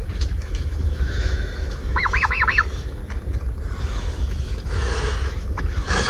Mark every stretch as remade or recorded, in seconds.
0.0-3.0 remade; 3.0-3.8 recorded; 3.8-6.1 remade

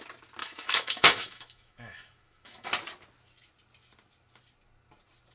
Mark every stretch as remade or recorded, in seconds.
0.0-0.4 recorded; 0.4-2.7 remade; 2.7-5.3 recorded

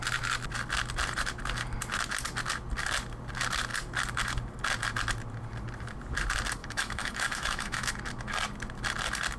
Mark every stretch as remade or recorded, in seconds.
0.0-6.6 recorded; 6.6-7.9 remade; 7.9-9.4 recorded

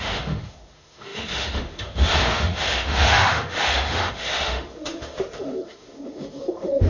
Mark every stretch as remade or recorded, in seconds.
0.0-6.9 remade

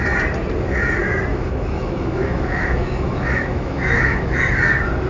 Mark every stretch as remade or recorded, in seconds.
0.0-1.3 recorded; 1.3-4.4 remade; 4.4-5.1 recorded

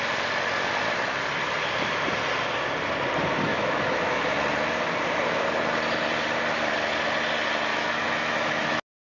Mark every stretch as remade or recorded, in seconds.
0.0-3.5 recorded; 3.5-4.2 remade; 4.2-7.7 recorded; 7.7-8.7 remade; 8.7-9.1 recorded